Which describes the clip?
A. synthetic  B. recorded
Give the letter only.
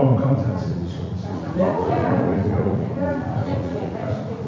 A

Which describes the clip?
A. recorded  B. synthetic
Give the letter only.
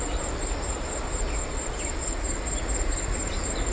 A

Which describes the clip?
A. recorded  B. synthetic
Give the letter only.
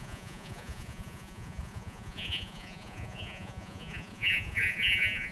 B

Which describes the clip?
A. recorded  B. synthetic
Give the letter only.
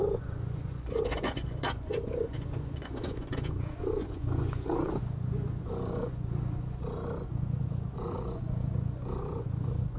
B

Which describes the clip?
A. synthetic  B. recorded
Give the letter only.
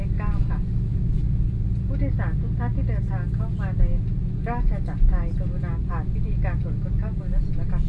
B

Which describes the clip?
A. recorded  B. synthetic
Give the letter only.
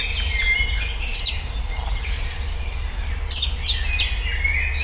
A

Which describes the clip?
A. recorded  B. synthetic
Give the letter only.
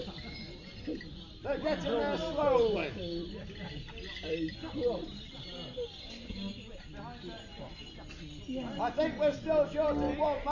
A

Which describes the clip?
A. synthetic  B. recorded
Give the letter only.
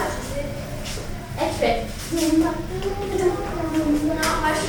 B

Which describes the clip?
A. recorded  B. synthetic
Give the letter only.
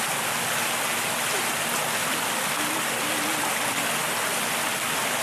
A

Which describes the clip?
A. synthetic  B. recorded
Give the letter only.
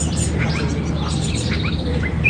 B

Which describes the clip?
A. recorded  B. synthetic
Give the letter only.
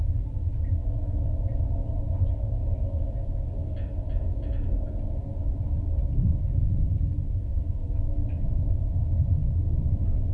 A